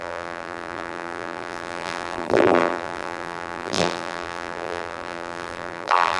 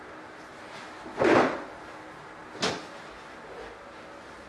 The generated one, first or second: first